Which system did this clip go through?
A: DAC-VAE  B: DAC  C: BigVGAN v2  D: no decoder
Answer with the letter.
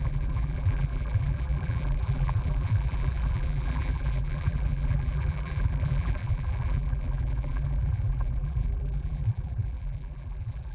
C